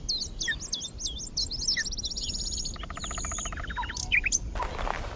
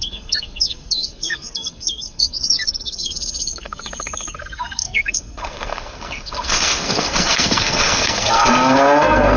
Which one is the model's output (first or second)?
second